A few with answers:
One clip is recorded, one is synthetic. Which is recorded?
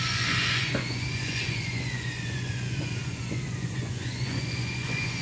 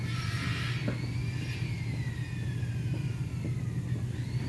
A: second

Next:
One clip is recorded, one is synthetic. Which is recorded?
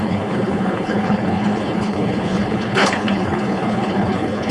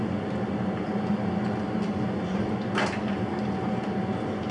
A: second